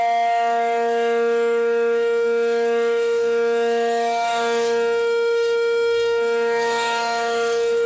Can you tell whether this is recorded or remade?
remade